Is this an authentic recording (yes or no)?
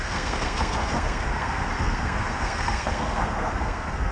no